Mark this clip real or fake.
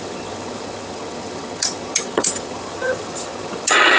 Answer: fake